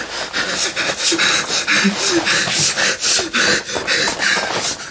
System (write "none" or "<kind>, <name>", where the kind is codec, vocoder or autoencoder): none